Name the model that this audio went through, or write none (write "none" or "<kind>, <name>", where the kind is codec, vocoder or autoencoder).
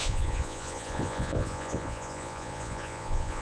vocoder, Vocos